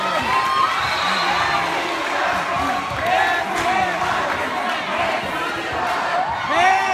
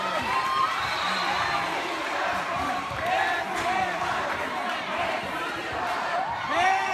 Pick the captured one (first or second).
first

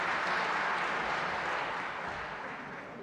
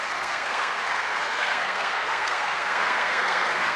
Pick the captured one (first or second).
first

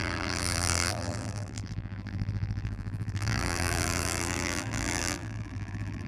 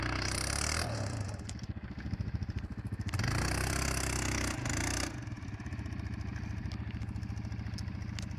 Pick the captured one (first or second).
second